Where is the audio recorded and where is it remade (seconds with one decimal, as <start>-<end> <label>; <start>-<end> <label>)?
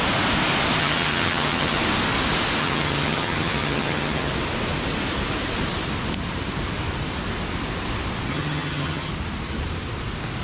0.0-0.8 recorded; 0.8-1.8 remade; 1.8-2.6 recorded; 2.6-4.3 remade; 4.3-8.3 recorded; 8.3-9.1 remade; 9.1-10.4 recorded